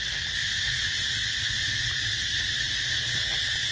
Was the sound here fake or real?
real